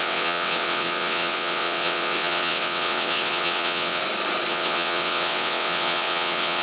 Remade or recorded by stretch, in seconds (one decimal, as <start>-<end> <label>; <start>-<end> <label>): 0.0-4.0 remade; 4.0-4.5 recorded; 4.5-6.6 remade